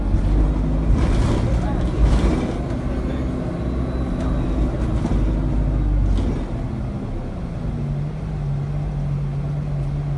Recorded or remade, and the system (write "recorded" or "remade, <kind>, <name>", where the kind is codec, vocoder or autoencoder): recorded